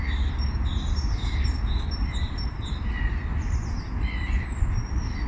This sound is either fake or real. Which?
real